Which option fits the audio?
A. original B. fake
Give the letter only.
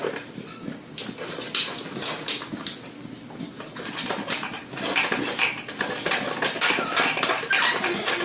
A